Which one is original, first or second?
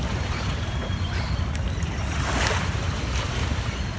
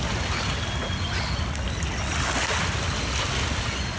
second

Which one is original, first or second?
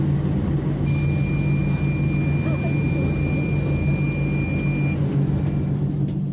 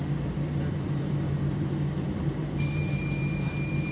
first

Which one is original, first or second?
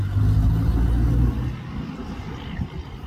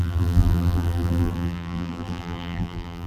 first